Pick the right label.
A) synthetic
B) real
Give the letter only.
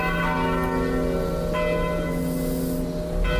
B